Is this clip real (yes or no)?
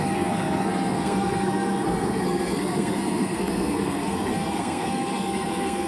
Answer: no